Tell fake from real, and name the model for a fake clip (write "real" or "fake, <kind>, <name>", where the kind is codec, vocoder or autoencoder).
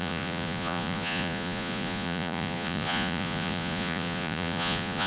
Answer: fake, vocoder, Vocos